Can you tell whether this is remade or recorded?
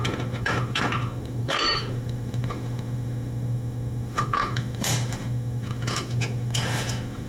remade